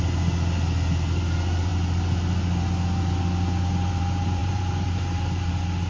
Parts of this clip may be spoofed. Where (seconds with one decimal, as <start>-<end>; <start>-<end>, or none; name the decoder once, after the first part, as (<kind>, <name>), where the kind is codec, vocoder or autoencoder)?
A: 4.4-5.5 (vocoder, BigVGAN v2)